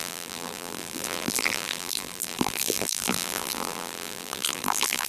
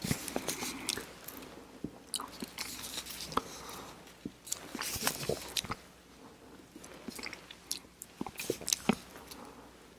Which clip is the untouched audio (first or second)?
second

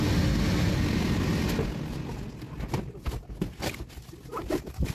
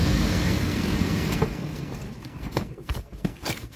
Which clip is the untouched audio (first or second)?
first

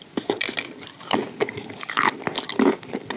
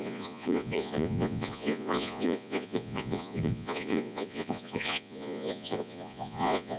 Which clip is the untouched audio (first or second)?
first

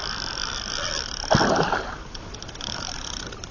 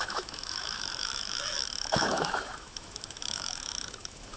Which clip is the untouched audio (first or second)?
first